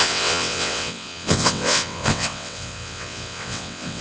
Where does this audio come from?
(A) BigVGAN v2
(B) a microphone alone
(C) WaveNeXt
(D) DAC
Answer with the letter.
C